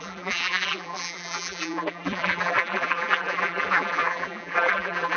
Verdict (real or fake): fake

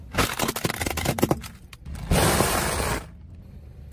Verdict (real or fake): real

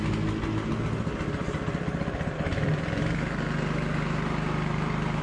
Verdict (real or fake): real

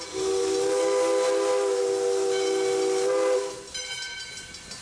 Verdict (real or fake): real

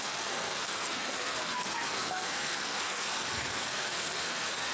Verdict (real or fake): fake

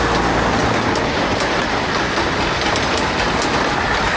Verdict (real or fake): real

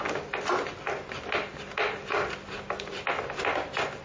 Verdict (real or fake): real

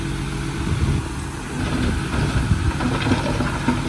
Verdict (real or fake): real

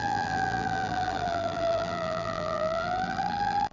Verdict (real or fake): fake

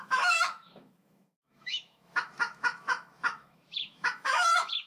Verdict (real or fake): fake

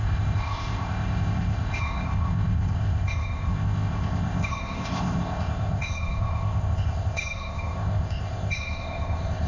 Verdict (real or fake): fake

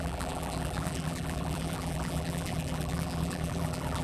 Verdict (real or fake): fake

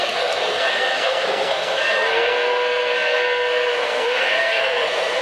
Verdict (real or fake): fake